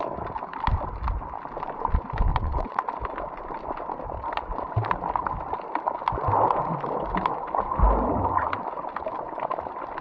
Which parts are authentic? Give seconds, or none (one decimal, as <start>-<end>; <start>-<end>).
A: 0.0-2.3; 2.8-10.0

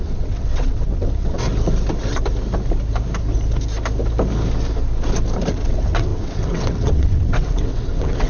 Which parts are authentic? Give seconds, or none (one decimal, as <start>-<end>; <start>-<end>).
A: 1.5-5.5

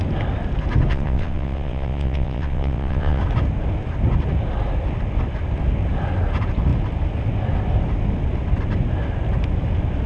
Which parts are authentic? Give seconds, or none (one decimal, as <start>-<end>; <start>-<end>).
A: 0.0-0.9; 3.2-10.1

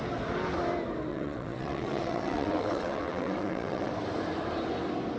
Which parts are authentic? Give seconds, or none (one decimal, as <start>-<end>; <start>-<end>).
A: 0.0-1.1; 3.9-5.2